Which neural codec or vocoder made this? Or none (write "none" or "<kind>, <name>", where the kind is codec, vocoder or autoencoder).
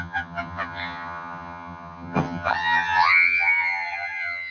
vocoder, HiFi-GAN